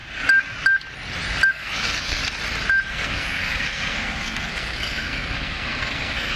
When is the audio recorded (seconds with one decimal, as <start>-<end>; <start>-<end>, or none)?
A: 0.0-1.5; 2.2-2.9